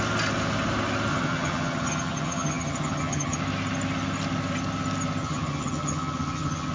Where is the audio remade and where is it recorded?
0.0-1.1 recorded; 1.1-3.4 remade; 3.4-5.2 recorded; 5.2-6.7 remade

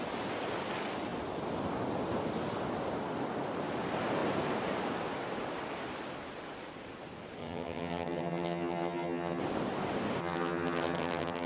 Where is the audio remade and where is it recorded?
0.0-7.4 recorded; 7.4-9.4 remade; 9.4-10.2 recorded; 10.2-11.5 remade

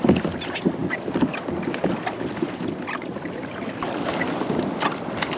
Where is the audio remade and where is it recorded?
0.0-5.4 recorded